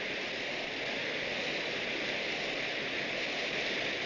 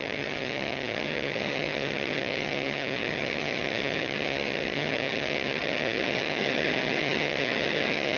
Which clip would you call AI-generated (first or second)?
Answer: second